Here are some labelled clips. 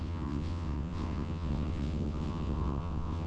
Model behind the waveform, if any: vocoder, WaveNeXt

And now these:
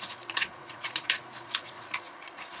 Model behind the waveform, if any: vocoder, Vocos